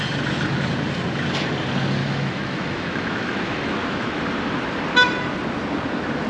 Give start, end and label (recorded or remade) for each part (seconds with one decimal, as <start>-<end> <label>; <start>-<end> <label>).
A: 0.0-2.0 recorded; 2.0-4.2 remade; 4.2-6.3 recorded